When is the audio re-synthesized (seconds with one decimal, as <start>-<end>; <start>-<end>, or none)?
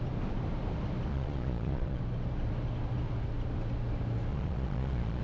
1.1-2.0; 4.3-5.2